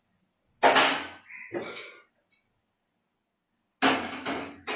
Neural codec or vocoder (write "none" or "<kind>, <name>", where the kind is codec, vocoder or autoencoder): none